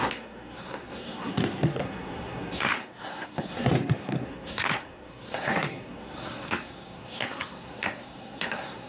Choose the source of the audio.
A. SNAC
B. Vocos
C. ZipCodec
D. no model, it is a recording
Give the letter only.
A